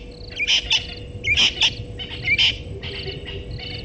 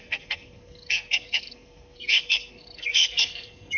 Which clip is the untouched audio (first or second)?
first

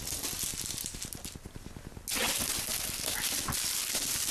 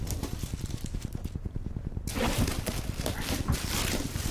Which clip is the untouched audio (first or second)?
first